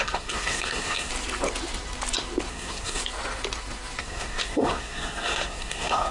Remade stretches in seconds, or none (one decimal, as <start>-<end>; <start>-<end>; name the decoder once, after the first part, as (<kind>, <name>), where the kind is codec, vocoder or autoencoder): 0.0-1.1 (codec, SNAC); 2.5-3.0; 4.0-6.1